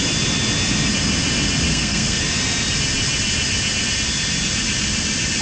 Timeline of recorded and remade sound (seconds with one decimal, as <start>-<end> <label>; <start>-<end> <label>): 0.0-1.7 recorded; 1.7-2.2 remade; 2.2-5.4 recorded